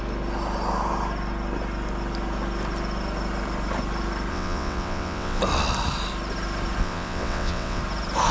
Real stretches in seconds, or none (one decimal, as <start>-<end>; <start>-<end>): 0.0-4.3; 5.4-6.8; 7.8-8.3